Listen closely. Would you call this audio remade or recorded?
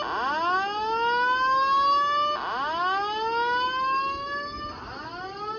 recorded